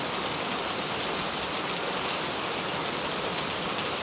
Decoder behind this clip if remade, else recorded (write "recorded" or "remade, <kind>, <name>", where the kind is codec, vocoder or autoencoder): recorded